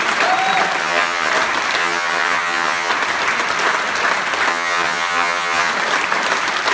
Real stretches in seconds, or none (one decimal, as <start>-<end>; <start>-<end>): 0.0-0.8; 1.3-1.8; 2.9-4.5; 5.7-6.7